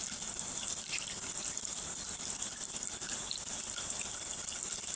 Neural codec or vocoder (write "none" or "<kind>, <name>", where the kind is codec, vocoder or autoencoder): none